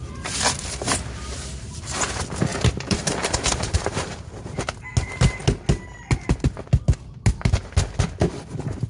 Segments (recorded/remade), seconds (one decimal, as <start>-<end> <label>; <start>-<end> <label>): 0.0-2.5 recorded; 2.5-4.3 remade; 4.3-8.9 recorded